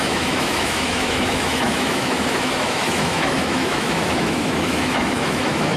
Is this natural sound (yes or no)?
no